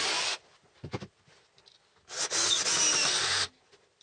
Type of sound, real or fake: real